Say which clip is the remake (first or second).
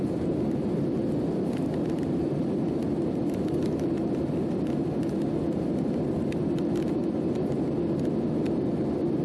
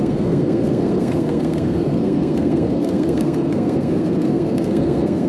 second